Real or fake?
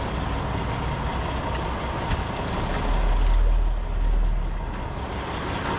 real